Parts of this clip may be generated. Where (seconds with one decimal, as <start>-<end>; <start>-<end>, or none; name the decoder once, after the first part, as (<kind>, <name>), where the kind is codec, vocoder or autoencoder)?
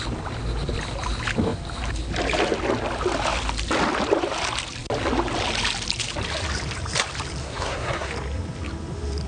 7.4-8.1 (codec, SNAC)